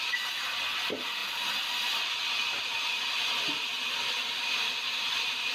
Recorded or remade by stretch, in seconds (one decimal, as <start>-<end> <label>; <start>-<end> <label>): 0.0-5.5 recorded